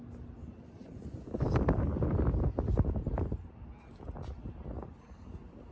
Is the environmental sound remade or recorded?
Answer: recorded